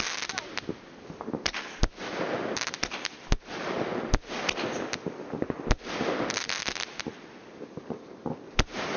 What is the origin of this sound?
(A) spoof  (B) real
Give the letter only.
B